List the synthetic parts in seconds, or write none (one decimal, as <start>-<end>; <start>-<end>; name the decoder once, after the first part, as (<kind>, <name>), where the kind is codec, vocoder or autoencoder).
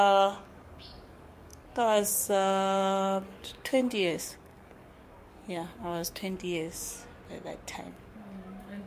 0.0-7.0 (codec, DAC); 7.9-8.9